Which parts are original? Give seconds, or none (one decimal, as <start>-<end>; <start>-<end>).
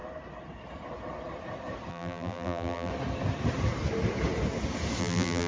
0.0-1.9; 2.9-5.0